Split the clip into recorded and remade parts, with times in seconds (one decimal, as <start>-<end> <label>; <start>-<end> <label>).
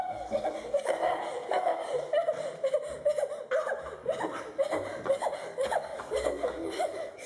0.0-1.9 remade; 1.9-5.1 recorded; 5.1-7.3 remade